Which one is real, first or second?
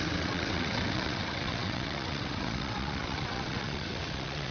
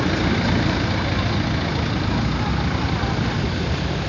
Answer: second